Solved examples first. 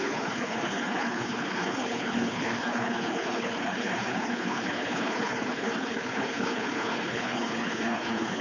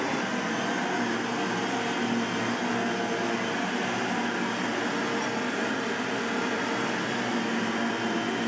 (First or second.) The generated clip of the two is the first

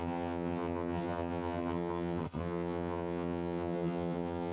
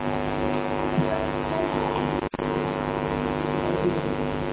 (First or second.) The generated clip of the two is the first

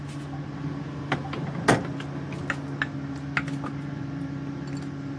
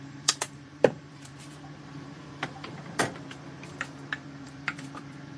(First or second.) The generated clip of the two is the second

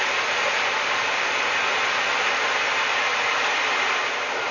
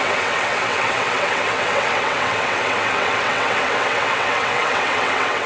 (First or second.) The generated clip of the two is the second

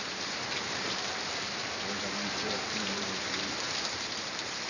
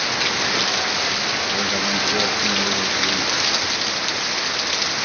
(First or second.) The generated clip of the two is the first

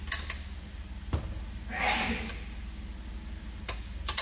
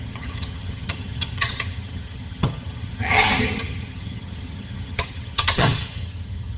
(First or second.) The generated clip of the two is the second